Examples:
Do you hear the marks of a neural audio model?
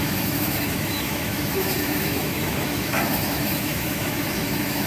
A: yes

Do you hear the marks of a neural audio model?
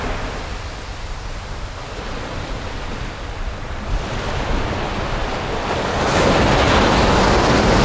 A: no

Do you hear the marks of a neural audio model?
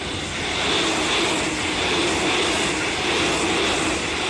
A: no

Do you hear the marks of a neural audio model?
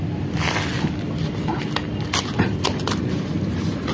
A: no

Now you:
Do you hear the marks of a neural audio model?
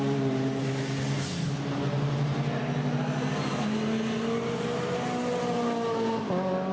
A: no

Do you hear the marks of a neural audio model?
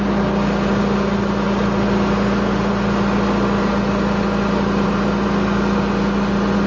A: no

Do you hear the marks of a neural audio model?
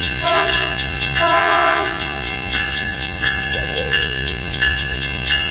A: yes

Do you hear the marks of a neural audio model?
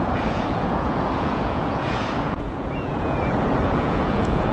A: yes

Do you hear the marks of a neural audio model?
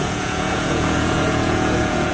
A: yes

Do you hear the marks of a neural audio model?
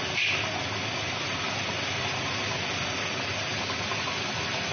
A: no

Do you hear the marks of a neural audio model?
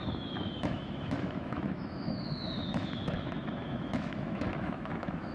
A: yes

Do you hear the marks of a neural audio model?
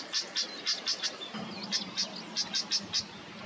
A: no